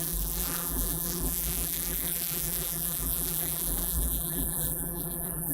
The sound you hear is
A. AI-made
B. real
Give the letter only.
A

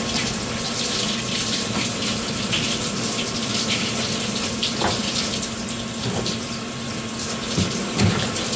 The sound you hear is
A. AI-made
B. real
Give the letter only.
A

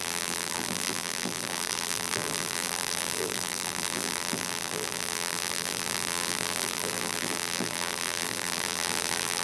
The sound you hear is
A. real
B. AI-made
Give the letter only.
B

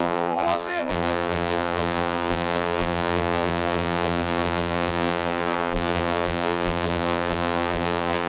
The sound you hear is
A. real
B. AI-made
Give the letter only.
B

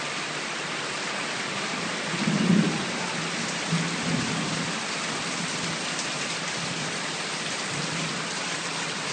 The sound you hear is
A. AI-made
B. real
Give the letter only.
A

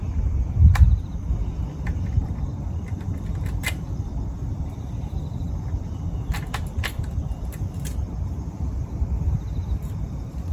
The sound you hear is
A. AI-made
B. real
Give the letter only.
A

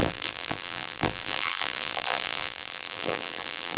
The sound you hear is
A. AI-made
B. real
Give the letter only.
A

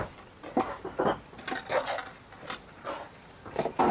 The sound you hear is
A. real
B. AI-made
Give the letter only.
A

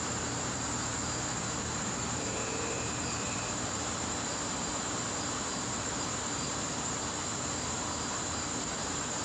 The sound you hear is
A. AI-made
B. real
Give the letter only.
A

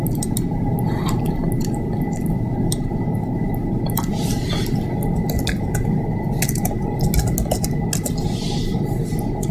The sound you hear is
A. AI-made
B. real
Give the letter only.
B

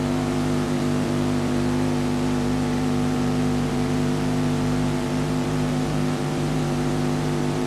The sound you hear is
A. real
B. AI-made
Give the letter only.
B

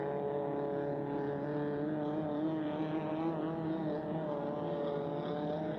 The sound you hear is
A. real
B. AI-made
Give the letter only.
A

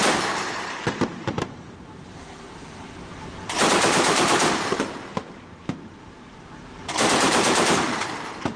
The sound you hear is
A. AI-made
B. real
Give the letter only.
A